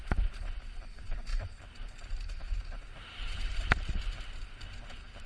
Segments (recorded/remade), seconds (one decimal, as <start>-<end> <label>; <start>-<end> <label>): 0.0-5.3 recorded